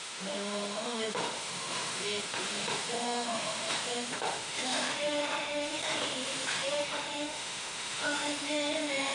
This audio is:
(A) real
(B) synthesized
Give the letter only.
B